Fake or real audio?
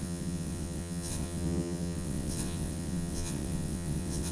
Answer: fake